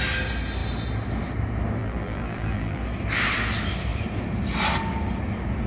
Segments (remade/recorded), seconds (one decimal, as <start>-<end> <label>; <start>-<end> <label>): 0.0-1.8 recorded; 1.8-2.8 remade; 2.8-5.7 recorded